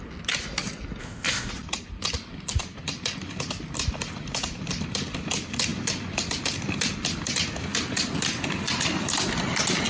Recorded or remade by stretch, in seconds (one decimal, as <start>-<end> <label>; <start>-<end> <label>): 0.0-1.0 recorded; 1.0-1.5 remade; 1.5-9.9 recorded